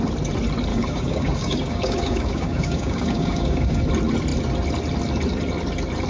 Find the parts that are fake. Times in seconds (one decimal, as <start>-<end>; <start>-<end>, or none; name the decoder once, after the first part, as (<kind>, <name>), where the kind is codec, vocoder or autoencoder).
0.7-3.8 (codec, DAC)

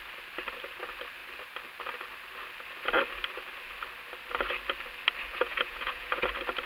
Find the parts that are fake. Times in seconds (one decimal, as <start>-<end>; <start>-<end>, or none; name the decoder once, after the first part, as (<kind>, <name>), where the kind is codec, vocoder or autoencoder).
5.3-6.2 (vocoder, Vocos)

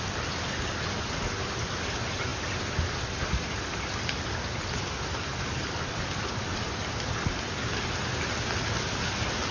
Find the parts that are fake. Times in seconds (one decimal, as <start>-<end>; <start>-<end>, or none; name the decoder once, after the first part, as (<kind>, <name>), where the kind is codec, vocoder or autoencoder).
none

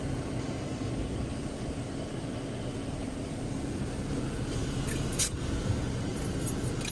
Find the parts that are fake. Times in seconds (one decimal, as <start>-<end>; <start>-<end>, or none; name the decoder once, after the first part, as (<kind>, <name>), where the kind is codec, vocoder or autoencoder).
1.3-1.9 (vocoder, BigVGAN v2); 3.0-3.8; 4.6-5.2

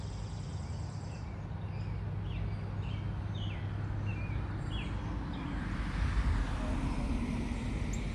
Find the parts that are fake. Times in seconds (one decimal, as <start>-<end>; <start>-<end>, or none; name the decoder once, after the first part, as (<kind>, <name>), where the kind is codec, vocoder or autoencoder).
none

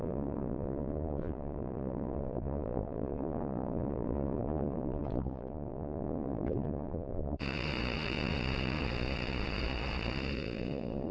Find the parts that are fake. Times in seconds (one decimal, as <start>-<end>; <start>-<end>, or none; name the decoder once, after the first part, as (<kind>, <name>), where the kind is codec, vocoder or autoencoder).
0.0-11.1 (vocoder, Vocos)